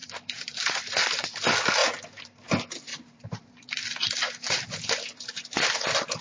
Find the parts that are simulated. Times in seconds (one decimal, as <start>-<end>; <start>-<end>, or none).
0.0-0.7; 2.9-4.9